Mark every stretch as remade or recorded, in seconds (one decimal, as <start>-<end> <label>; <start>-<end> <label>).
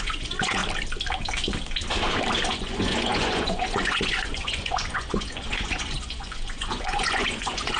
0.0-0.6 remade; 0.6-2.5 recorded; 2.5-7.8 remade